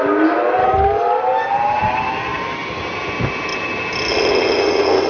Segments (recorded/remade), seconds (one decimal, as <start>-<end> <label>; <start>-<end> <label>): 0.0-0.6 recorded; 0.6-1.2 remade; 1.2-5.1 recorded